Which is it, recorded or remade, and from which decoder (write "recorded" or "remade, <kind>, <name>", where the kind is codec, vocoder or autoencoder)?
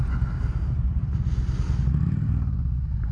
recorded